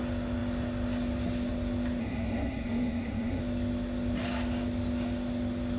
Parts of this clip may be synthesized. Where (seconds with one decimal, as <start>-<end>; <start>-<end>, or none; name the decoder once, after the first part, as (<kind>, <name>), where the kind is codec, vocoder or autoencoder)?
2.0-3.4 (codec, SNAC)